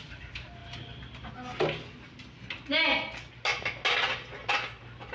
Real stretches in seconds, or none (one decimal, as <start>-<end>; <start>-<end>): 0.0-5.1